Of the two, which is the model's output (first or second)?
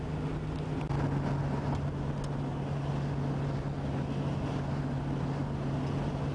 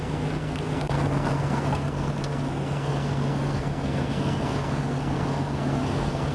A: second